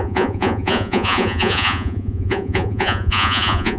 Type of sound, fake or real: fake